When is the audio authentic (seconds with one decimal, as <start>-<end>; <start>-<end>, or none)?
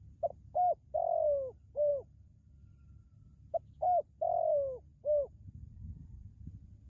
0.0-4.9; 6.2-6.9